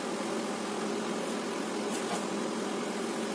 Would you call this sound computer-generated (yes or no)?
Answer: no